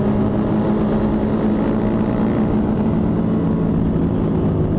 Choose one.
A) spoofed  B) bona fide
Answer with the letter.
B